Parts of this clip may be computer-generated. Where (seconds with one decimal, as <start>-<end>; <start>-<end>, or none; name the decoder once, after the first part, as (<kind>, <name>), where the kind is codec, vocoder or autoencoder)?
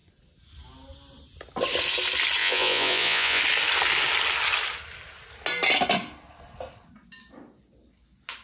2.4-3.4 (vocoder, Vocos)